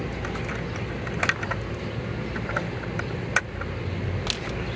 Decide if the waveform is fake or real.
real